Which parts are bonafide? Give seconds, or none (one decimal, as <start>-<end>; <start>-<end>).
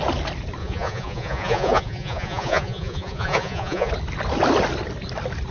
0.0-0.6; 3.9-5.5